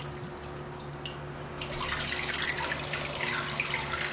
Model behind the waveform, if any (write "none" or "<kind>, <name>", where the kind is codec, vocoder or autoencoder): none